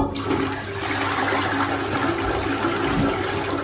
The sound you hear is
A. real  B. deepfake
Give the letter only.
A